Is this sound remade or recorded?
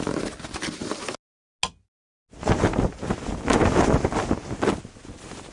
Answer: recorded